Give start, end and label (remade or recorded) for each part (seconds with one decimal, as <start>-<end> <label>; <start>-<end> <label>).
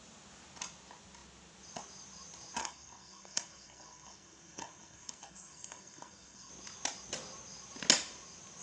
0.0-2.6 recorded; 2.6-6.5 remade; 6.5-8.6 recorded